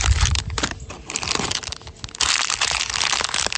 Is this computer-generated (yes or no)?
no